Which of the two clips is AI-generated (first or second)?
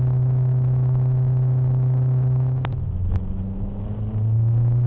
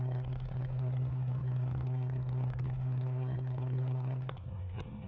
second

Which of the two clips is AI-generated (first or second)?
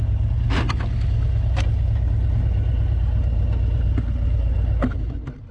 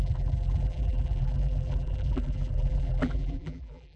second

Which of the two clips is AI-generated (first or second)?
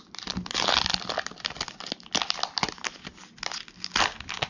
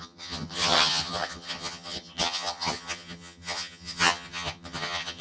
second